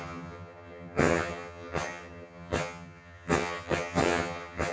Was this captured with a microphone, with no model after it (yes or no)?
no